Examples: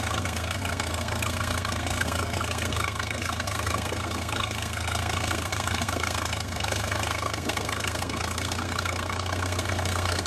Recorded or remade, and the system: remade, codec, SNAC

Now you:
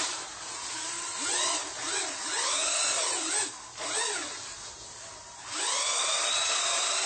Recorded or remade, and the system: recorded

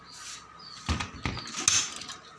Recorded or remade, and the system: recorded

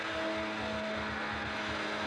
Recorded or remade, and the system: recorded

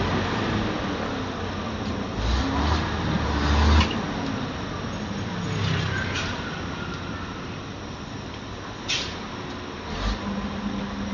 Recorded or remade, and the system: recorded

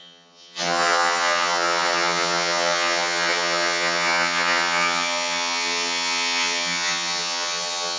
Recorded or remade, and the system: remade, vocoder, HiFi-GAN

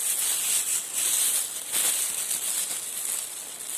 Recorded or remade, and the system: recorded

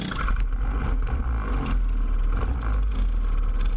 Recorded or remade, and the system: recorded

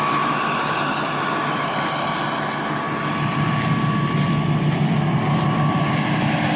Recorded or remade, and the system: recorded